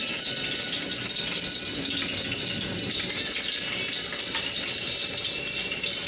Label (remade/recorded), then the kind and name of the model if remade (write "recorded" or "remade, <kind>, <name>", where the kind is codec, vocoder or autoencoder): recorded